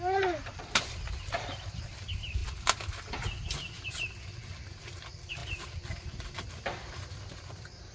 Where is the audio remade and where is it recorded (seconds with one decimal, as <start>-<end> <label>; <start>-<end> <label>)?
0.0-2.4 remade; 2.4-4.1 recorded; 4.1-5.4 remade; 5.4-6.5 recorded; 6.5-7.9 remade